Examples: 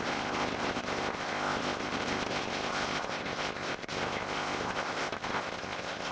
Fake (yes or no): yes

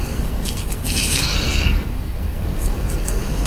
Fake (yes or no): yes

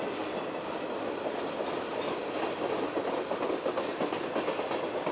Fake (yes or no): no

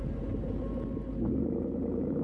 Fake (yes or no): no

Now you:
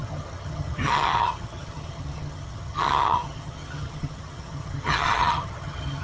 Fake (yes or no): yes